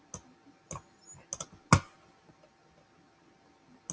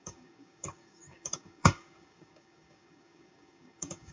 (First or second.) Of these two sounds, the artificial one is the second